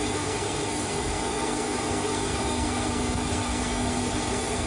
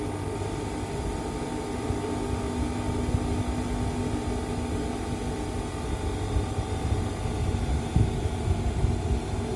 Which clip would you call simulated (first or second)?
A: first